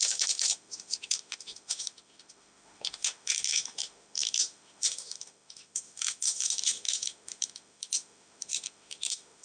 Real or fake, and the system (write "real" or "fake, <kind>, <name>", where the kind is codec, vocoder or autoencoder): fake, autoencoder, DAC-VAE